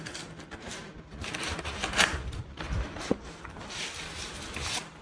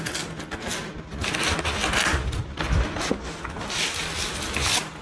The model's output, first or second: first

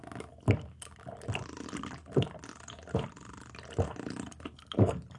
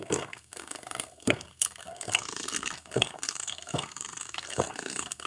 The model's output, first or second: second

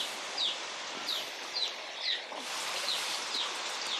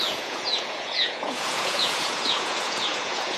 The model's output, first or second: second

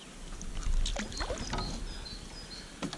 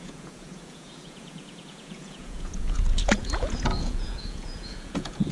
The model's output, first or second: second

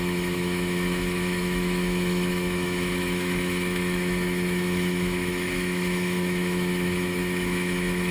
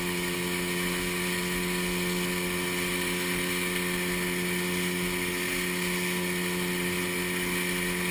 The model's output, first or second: first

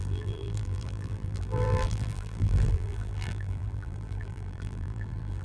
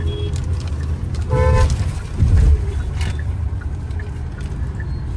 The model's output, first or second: first